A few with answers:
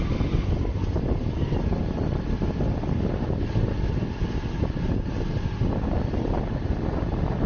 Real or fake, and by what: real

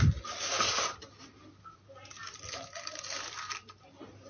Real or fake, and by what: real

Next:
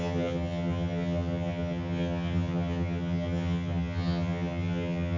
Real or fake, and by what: fake, vocoder, HiFi-GAN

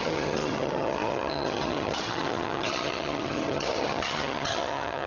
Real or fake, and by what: fake, vocoder, HiFi-GAN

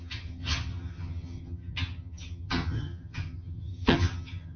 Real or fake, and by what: fake, vocoder, HiFi-GAN